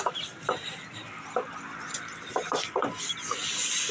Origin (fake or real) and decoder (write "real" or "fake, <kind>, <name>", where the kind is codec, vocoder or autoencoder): real